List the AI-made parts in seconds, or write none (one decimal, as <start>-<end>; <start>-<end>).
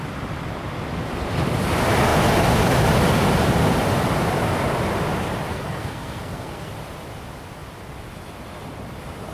5.5-6.7